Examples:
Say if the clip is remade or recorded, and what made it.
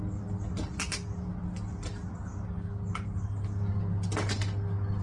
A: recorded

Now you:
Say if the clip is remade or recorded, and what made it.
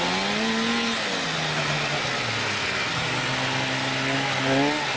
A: recorded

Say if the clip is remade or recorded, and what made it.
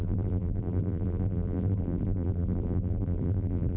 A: remade, vocoder, BigVGAN v2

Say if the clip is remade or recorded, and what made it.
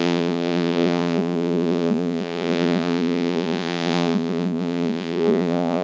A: remade, vocoder, Vocos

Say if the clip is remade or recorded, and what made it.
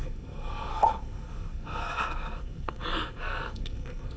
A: remade, codec, SNAC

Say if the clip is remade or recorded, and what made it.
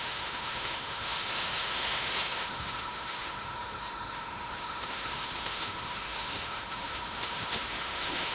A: remade, autoencoder, DAC-VAE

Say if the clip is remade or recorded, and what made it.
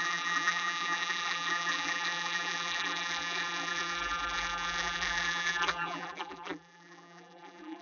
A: remade, vocoder, BigVGAN v2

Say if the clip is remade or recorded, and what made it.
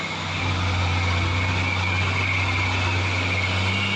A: recorded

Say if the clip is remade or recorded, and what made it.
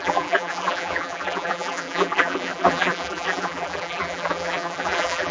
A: remade, vocoder, BigVGAN v2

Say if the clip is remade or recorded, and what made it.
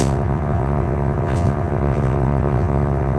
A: remade, vocoder, WaveNeXt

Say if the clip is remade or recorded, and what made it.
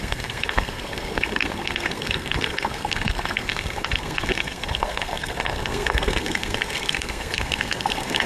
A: remade, codec, SNAC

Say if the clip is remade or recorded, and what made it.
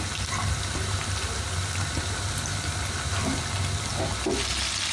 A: recorded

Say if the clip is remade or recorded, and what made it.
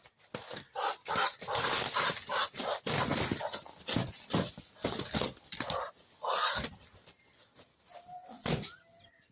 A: recorded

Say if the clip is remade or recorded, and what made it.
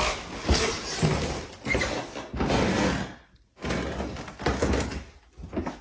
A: recorded